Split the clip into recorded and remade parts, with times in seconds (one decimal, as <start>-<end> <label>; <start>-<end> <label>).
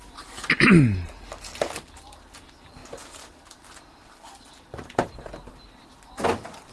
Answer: 0.0-6.7 recorded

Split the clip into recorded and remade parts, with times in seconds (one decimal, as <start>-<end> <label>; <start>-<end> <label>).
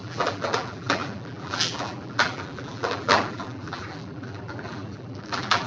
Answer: 0.0-5.7 remade